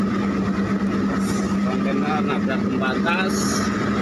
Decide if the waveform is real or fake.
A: real